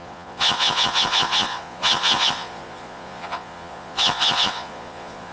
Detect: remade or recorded remade